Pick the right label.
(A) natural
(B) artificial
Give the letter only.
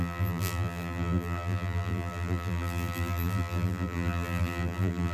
B